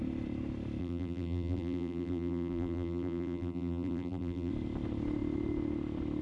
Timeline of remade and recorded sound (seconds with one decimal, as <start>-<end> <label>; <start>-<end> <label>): 0.0-0.8 recorded; 0.8-4.5 remade; 4.5-6.2 recorded